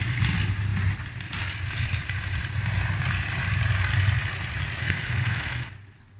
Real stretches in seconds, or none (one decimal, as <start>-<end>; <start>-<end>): 0.0-4.8; 5.7-6.2